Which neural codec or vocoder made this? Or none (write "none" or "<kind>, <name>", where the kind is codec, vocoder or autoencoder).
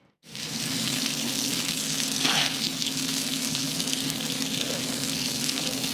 codec, SNAC